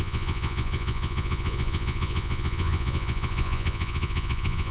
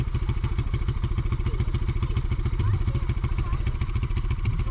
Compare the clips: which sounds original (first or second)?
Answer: second